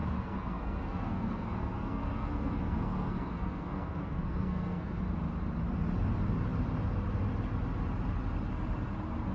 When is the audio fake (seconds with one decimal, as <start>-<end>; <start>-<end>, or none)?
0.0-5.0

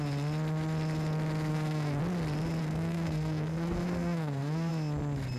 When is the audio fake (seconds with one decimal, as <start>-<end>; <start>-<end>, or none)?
1.5-2.0; 2.6-4.7

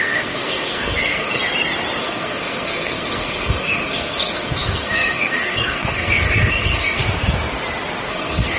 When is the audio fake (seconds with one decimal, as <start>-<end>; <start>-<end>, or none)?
0.0-1.4; 2.0-7.0; 8.1-8.6

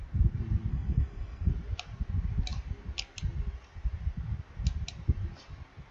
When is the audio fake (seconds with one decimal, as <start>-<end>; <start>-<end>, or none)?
0.7-1.5

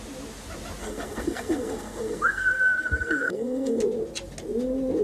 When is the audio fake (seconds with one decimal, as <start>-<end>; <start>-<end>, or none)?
0.8-3.8

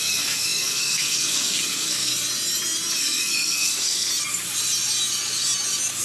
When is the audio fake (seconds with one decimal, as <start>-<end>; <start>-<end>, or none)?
0.0-2.1; 3.0-4.1

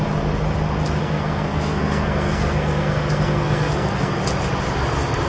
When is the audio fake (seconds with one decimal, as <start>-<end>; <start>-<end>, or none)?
1.0-4.2

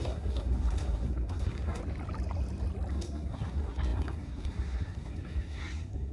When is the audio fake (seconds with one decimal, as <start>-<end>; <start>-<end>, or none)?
0.0-1.8; 2.9-6.1